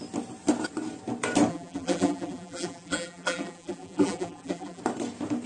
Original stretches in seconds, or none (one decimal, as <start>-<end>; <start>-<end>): 0.0-1.5; 4.8-5.5